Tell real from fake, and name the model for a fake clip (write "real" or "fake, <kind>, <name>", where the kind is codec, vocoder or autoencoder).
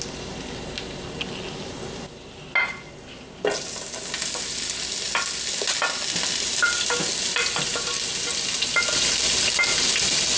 real